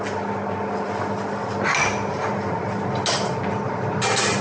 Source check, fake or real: real